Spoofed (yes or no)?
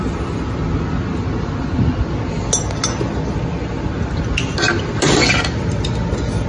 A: no